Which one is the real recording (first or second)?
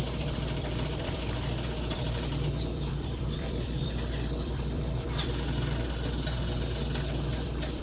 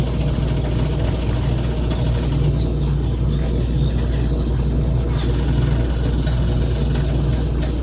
second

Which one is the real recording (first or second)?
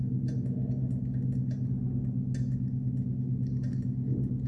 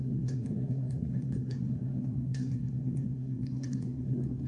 first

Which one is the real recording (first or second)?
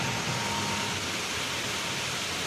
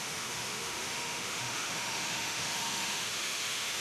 first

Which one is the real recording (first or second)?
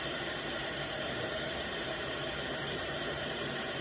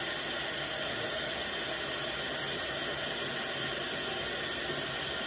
second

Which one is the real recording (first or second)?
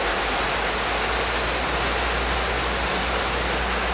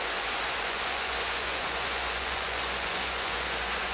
first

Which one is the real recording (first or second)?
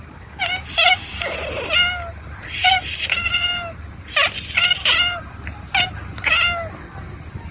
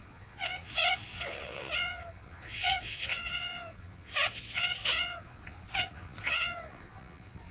first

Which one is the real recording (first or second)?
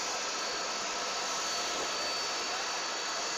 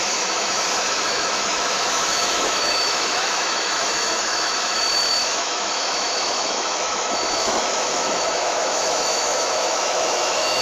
first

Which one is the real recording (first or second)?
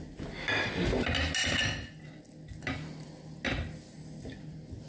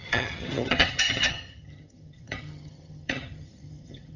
first